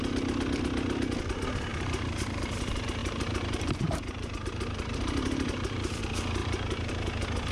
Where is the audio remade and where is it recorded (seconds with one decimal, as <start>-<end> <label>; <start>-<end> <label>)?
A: 0.0-1.7 recorded; 1.7-2.6 remade; 2.6-3.0 recorded; 3.0-6.0 remade; 6.0-6.4 recorded; 6.4-6.9 remade; 6.9-7.5 recorded